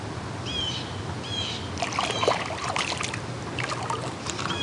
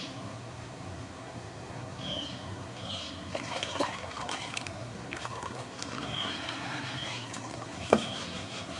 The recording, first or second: first